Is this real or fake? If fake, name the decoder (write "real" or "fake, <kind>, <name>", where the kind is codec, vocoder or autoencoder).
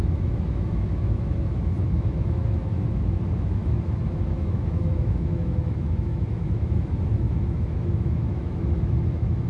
fake, autoencoder, DAC-VAE